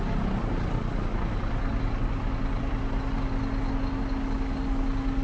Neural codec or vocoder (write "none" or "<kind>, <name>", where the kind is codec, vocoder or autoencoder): none